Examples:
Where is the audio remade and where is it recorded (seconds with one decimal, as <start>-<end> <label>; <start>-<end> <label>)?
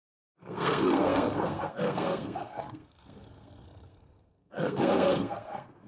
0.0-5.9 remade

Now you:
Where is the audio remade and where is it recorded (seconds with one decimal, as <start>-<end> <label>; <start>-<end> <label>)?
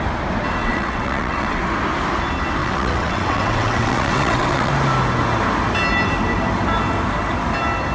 0.0-0.6 recorded; 0.6-1.6 remade; 1.6-2.6 recorded; 2.6-4.7 remade; 4.7-7.9 recorded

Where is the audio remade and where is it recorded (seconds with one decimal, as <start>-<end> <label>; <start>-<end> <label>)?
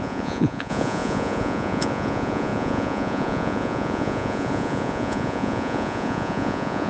0.0-6.9 remade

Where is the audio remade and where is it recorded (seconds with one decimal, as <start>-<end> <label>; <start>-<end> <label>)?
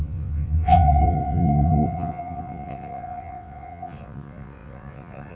0.0-5.4 remade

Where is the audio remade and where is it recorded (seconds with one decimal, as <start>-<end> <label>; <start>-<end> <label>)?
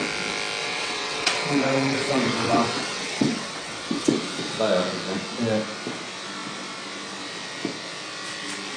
0.0-0.6 recorded; 0.6-4.6 remade; 4.6-8.8 recorded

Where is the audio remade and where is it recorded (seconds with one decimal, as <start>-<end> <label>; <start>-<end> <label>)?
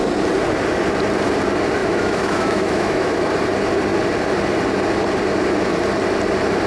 0.0-1.8 recorded; 1.8-3.3 remade; 3.3-6.7 recorded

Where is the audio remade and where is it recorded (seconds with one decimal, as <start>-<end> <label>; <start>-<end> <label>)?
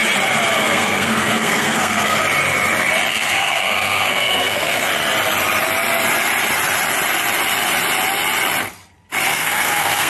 0.0-0.5 recorded; 0.5-2.2 remade; 2.2-3.1 recorded; 3.1-4.9 remade; 4.9-9.3 recorded; 9.3-10.1 remade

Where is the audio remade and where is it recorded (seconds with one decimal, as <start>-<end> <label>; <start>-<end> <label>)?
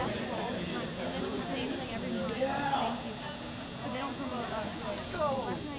0.0-0.5 remade; 0.5-4.3 recorded; 4.3-4.9 remade; 4.9-5.8 recorded